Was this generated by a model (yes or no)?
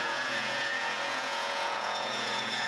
yes